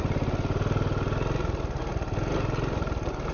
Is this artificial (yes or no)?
no